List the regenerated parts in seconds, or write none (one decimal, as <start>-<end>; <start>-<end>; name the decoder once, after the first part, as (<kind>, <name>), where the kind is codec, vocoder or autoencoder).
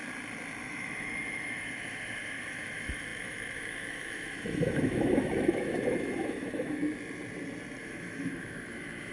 0.6-6.8 (autoencoder, DAC-VAE); 7.8-9.1